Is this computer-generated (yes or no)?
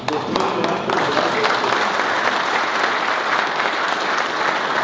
no